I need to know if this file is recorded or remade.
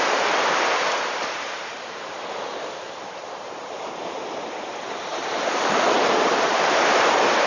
remade